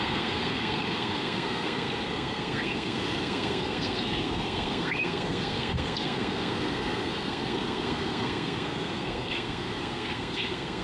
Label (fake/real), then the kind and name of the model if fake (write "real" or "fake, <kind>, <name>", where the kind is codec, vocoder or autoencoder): fake, codec, SNAC